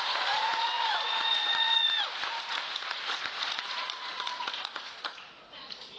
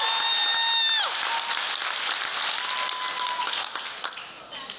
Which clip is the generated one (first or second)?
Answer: first